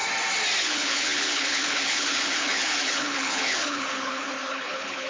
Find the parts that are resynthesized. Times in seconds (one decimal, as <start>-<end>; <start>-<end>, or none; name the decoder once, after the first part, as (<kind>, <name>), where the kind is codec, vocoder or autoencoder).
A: 0.6-5.1 (codec, HILCodec)